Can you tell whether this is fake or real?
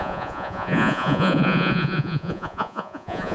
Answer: fake